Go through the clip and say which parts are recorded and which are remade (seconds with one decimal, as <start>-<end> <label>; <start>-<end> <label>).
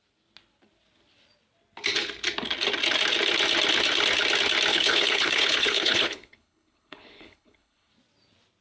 0.0-4.7 recorded; 4.7-7.9 remade; 7.9-8.6 recorded